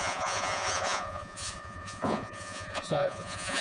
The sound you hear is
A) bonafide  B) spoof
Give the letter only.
B